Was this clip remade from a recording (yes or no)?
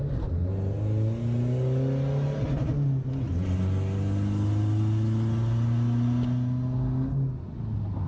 no